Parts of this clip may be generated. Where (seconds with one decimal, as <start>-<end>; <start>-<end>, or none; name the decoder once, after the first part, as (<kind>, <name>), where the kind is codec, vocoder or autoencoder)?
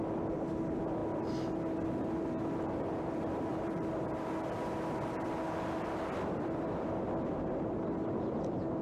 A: 3.5-4.1 (vocoder, BigVGAN v2)